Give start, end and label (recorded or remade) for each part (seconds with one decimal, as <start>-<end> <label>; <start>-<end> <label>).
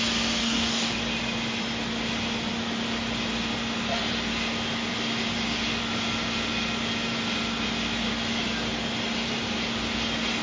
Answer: 0.0-0.4 recorded; 0.4-1.0 remade; 1.0-10.4 recorded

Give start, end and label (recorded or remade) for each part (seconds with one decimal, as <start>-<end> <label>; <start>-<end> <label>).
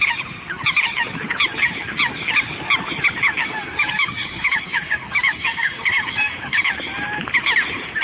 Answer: 0.0-3.4 recorded; 3.4-6.7 remade; 6.7-8.0 recorded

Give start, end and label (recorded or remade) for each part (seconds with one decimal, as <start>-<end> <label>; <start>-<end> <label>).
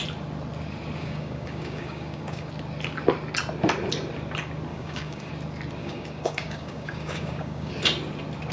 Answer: 0.0-1.0 recorded; 1.0-2.5 remade; 2.5-4.7 recorded; 4.7-5.3 remade; 5.3-5.8 recorded; 5.8-7.7 remade; 7.7-8.5 recorded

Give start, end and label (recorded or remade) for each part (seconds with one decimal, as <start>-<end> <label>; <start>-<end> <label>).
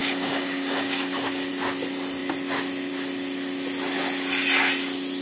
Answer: 0.0-1.5 remade; 1.5-5.2 recorded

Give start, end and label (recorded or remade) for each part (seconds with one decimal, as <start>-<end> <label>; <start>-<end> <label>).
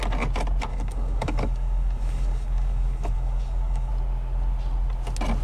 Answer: 0.0-0.7 recorded; 0.7-3.9 remade; 3.9-5.4 recorded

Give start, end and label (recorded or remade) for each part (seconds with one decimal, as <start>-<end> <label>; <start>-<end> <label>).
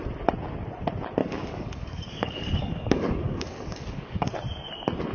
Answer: 0.0-1.2 recorded; 1.2-4.3 remade; 4.3-5.1 recorded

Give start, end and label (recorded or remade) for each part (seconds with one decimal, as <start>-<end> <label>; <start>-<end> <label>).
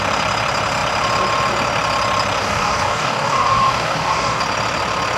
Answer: 0.0-2.4 recorded; 2.4-4.4 remade; 4.4-5.2 recorded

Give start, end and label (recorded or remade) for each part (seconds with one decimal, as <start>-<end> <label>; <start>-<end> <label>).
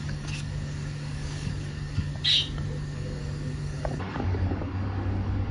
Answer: 0.0-2.1 remade; 2.1-2.8 recorded; 2.8-5.5 remade